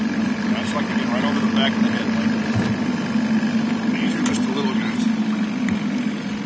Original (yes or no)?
yes